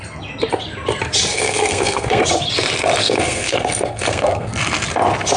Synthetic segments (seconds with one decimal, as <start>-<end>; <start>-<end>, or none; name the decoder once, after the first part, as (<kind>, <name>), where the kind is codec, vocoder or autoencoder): 1.3-2.2 (codec, SNAC); 3.0-4.5